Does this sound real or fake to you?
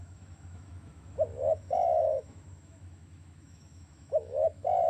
fake